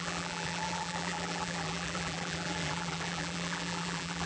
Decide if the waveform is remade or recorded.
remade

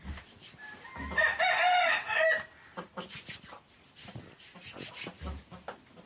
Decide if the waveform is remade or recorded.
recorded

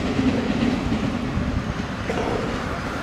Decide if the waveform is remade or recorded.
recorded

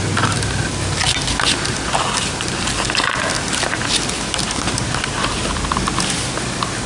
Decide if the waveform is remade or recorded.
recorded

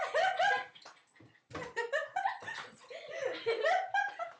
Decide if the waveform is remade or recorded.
recorded